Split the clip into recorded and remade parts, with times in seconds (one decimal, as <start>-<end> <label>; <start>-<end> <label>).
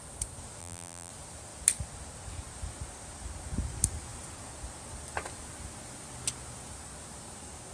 0.0-0.6 recorded; 0.6-1.1 remade; 1.1-7.7 recorded